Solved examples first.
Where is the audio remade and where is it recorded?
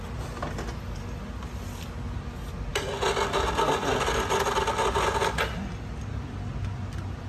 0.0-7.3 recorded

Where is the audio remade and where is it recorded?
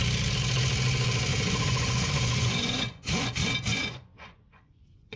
0.0-1.3 recorded; 1.3-3.3 remade; 3.3-3.7 recorded; 3.7-5.2 remade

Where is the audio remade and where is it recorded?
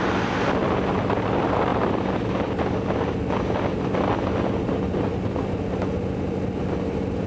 0.0-7.3 recorded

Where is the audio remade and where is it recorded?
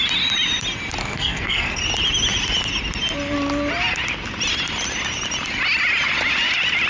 0.0-1.0 recorded; 1.0-1.8 remade; 1.8-6.9 recorded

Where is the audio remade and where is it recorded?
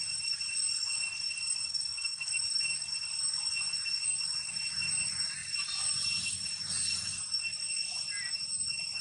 0.0-1.4 recorded; 1.4-2.4 remade; 2.4-9.0 recorded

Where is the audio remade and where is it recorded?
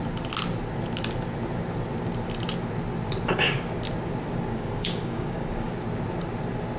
0.0-4.5 recorded; 4.5-5.7 remade; 5.7-6.8 recorded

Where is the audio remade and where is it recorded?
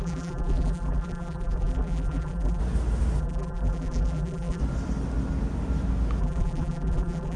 0.0-2.6 remade; 2.6-3.2 recorded; 3.2-4.6 remade; 4.6-6.2 recorded; 6.2-7.4 remade